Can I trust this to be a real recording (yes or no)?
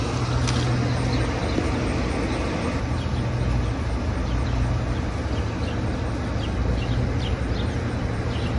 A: yes